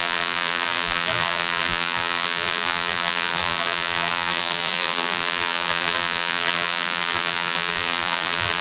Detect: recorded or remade remade